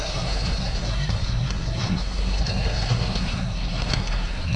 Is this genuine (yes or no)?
no